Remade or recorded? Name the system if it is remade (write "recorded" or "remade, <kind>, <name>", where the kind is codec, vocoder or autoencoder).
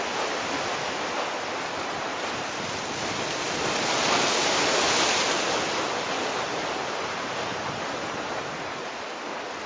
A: recorded